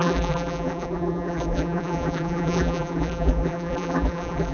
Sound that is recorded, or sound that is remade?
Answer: remade